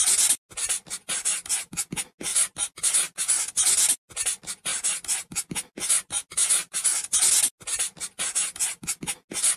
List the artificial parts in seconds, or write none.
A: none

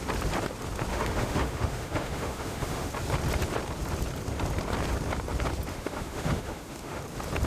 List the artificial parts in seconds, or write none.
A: 0.9-2.9 (autoencoder, DAC-VAE); 5.7-7.0

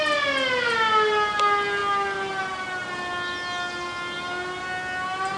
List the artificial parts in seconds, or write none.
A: none

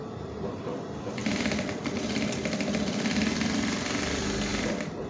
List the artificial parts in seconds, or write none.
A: none

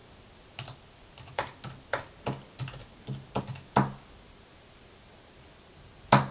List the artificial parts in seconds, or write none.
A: none